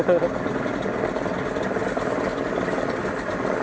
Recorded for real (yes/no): yes